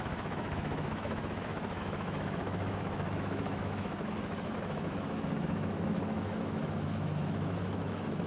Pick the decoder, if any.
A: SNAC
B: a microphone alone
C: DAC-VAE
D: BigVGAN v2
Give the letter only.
C